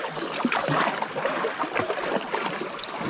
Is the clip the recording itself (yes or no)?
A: yes